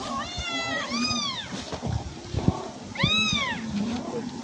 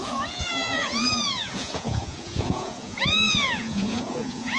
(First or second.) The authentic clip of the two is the first